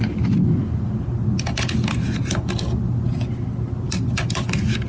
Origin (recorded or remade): recorded